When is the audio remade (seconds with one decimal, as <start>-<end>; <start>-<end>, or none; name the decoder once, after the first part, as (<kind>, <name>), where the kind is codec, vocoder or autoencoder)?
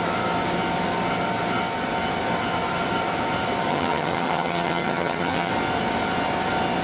3.7-5.5 (vocoder, HiFi-GAN)